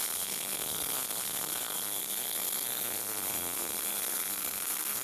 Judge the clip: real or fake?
fake